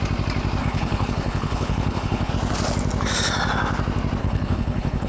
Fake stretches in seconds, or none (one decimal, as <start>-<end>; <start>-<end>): 0.6-2.3; 4.2-5.1